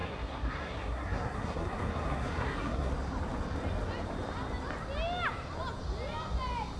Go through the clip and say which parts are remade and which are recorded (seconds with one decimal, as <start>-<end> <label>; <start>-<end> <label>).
0.0-2.9 remade; 2.9-6.8 recorded